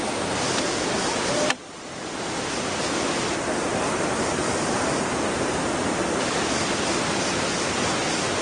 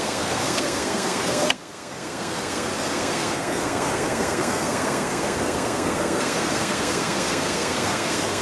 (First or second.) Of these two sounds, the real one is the first